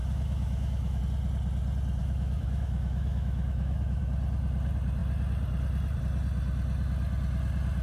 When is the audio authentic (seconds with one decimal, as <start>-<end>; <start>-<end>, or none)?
1.0-2.0; 4.0-7.8